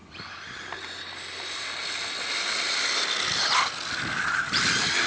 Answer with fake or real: real